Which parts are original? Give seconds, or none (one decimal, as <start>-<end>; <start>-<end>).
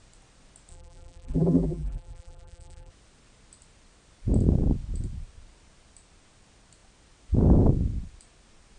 0.0-0.7; 2.9-8.8